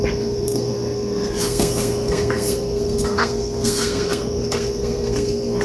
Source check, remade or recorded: remade